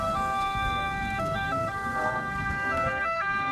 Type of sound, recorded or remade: remade